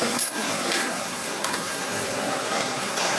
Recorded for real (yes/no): no